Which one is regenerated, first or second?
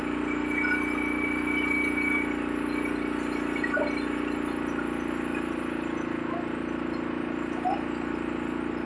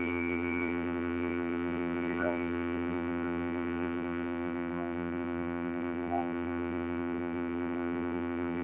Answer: second